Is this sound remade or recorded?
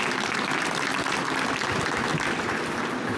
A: recorded